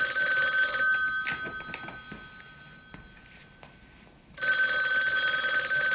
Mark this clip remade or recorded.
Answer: recorded